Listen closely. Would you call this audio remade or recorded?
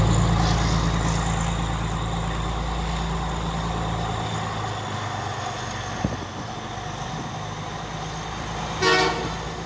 recorded